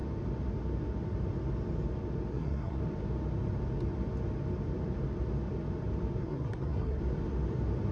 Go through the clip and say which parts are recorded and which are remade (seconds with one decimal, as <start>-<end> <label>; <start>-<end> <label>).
0.0-2.3 recorded; 2.3-2.8 remade; 2.8-6.2 recorded; 6.2-7.0 remade; 7.0-7.9 recorded